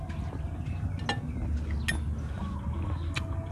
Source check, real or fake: real